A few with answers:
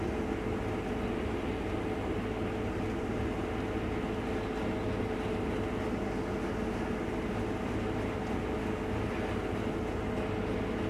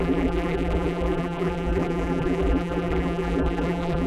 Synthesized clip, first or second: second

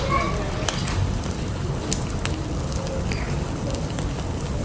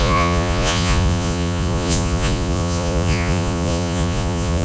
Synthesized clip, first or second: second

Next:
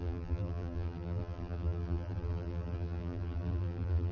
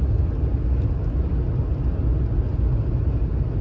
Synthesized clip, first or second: first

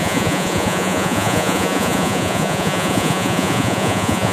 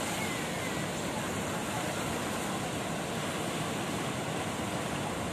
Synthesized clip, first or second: first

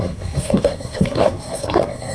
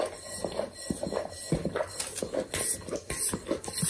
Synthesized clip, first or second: first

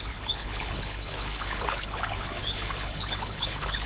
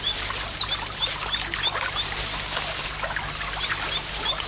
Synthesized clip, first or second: first